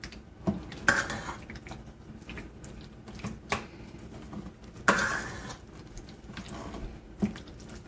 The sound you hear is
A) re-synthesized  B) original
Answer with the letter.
B